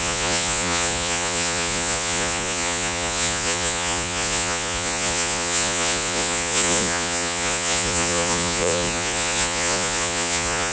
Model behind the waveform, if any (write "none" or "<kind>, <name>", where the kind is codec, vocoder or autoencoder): vocoder, Vocos